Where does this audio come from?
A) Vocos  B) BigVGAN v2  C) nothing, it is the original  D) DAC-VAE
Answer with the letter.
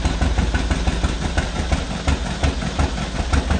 C